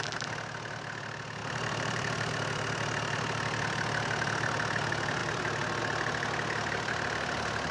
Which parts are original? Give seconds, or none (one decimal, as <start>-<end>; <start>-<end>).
0.0-1.4; 2.3-7.7